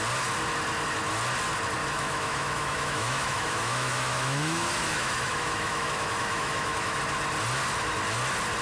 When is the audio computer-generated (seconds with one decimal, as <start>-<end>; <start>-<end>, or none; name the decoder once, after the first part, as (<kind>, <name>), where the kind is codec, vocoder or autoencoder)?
1.8-7.0 (autoencoder, DAC-VAE)